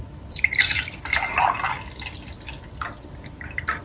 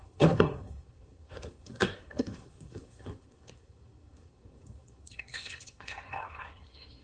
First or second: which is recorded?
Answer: first